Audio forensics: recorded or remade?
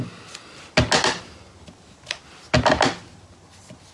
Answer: recorded